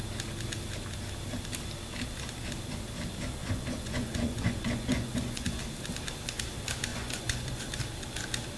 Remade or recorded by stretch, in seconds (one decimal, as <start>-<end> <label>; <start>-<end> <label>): 0.0-3.4 recorded; 3.4-5.6 remade; 5.6-6.9 recorded; 6.9-7.6 remade; 7.6-8.6 recorded